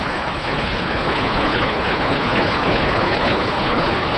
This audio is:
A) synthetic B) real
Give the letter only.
A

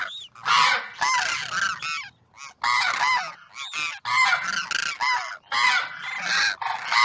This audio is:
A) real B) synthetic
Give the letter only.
A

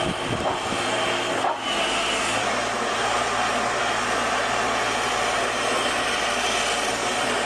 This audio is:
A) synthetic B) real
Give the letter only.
B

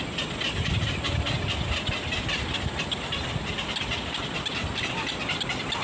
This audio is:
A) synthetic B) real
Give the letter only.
B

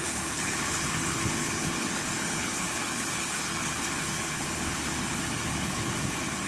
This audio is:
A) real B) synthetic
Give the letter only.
B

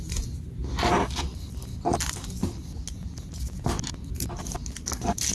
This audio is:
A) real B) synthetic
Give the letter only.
A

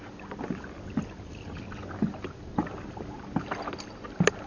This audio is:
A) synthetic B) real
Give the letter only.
B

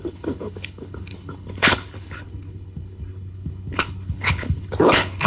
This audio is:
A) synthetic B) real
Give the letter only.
A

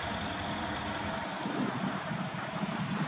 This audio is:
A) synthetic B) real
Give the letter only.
B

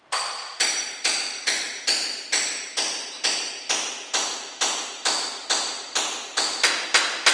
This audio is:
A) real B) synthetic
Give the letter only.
A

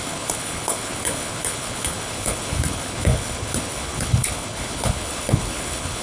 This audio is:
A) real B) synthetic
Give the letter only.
B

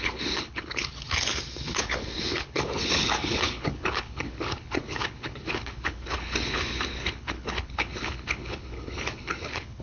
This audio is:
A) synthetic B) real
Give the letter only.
A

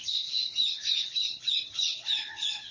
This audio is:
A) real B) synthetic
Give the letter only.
B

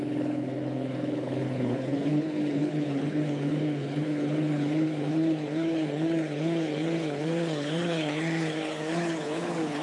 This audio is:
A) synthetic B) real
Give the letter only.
A